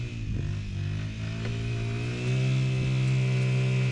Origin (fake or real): real